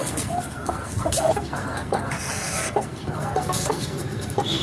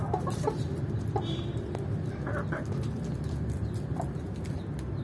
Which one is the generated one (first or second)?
first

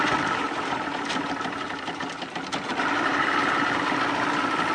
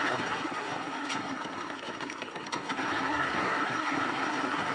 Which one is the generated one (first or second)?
second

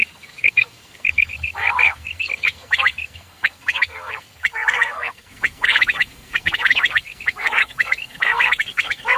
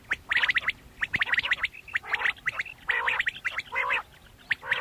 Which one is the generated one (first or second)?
first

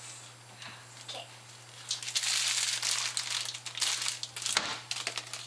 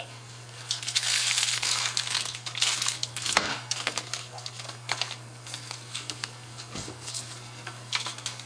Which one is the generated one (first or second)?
second